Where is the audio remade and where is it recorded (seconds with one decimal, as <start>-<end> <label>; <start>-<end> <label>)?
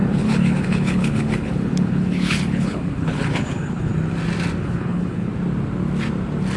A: 0.0-3.9 remade; 3.9-4.6 recorded; 4.6-5.3 remade; 5.3-6.6 recorded